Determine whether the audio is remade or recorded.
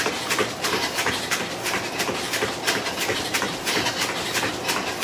recorded